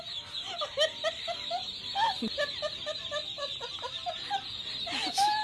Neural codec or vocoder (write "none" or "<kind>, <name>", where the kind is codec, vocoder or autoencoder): none